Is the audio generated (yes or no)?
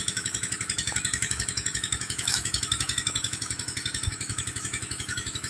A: yes